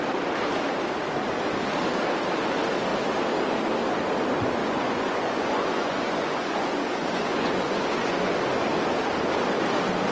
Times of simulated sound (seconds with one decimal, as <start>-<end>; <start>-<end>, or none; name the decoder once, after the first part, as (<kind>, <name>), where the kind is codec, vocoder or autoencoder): 4.6-8.3 (vocoder, Vocos)